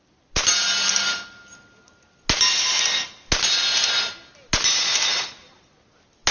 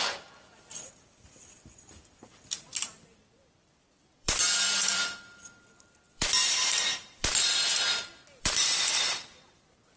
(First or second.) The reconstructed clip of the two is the second